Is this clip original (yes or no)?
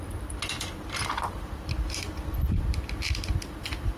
no